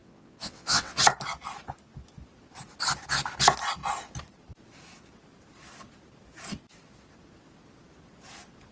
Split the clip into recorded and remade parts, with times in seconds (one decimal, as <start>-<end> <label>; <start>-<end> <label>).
0.0-1.0 remade; 1.0-8.7 recorded